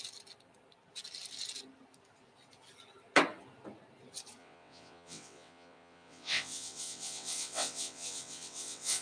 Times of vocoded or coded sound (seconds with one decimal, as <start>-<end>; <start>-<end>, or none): 4.4-9.0